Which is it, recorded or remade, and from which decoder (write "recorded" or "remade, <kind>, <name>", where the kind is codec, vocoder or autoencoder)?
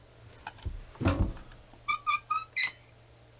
recorded